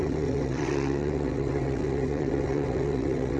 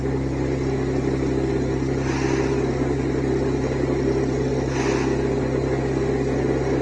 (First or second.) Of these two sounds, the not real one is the first